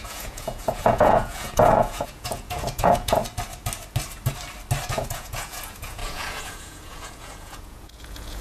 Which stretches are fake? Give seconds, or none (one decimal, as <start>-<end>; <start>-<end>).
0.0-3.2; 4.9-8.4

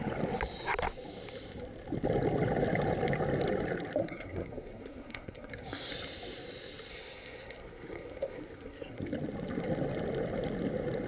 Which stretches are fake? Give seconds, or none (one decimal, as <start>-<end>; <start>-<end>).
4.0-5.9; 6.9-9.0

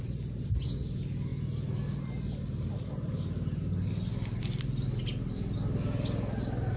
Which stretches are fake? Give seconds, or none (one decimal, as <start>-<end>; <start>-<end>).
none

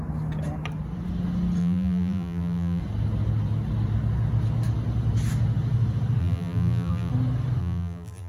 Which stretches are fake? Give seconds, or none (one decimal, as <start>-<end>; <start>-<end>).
1.6-2.8; 6.2-7.1; 7.6-8.3

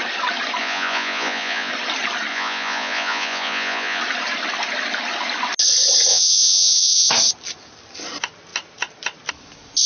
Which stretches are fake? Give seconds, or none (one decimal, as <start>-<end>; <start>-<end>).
0.6-1.7; 2.3-4.0; 6.1-7.1

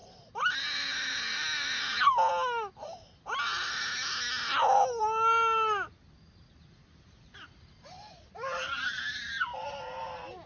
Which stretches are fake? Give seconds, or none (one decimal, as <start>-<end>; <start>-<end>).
none

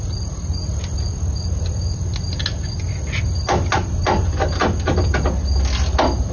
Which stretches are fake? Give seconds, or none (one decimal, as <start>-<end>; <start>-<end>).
none